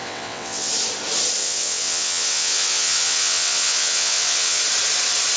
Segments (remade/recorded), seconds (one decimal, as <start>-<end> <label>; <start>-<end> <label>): 0.0-0.7 remade; 0.7-1.4 recorded; 1.4-4.6 remade; 4.6-5.4 recorded